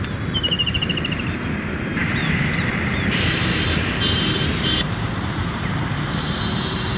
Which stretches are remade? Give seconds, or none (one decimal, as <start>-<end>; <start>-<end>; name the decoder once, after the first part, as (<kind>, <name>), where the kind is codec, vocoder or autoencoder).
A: 0.0-7.0 (vocoder, BigVGAN v2)